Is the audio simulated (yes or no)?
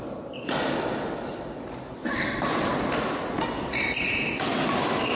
no